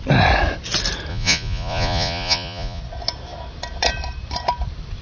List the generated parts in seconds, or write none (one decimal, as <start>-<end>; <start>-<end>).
1.1-2.8